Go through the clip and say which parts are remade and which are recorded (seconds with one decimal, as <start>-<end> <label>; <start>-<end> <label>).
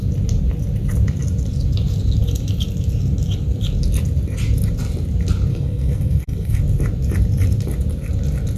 0.0-5.5 recorded; 5.5-6.6 remade; 6.6-8.6 recorded